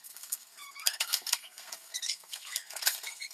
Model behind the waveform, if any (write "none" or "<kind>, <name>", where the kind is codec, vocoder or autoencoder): codec, SNAC